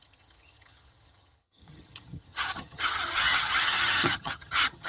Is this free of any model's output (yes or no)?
no